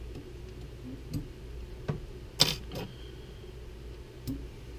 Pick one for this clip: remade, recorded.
recorded